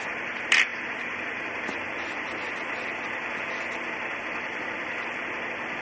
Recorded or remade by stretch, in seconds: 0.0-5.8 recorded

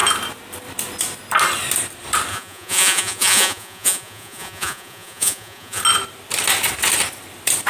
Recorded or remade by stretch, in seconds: 0.0-2.3 recorded; 2.3-5.8 remade; 5.8-7.7 recorded